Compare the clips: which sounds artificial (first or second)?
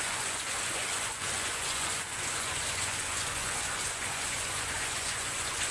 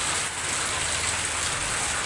first